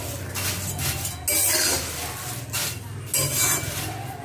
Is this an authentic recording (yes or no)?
yes